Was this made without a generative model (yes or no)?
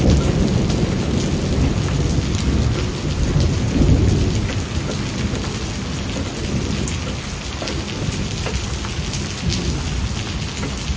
yes